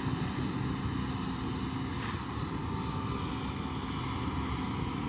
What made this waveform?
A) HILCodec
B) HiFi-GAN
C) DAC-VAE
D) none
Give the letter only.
D